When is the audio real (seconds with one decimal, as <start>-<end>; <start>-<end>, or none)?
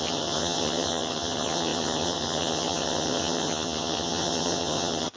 none